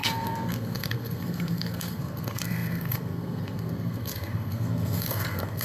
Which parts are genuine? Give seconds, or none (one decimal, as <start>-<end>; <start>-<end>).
none